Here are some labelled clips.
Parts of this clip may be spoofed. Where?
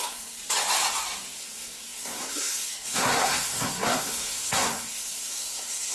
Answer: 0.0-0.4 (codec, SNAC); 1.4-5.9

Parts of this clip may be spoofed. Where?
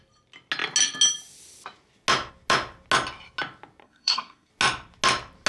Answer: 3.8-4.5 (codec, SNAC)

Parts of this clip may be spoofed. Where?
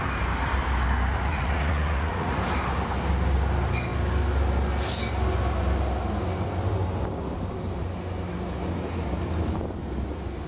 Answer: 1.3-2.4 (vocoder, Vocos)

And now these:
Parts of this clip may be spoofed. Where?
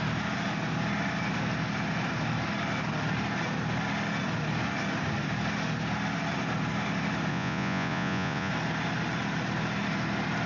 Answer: 7.3-8.5 (vocoder, Vocos)